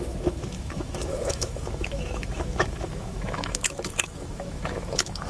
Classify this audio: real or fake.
fake